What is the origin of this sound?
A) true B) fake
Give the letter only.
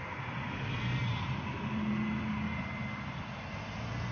A